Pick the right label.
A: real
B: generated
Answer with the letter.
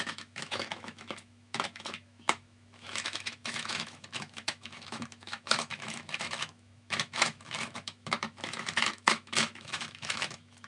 B